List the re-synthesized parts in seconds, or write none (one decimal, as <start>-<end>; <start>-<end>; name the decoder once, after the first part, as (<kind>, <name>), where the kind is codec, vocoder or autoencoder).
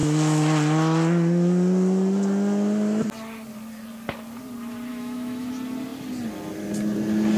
4.9-5.5 (autoencoder, DAC-VAE)